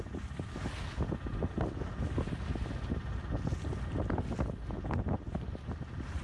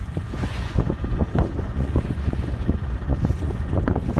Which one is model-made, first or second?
second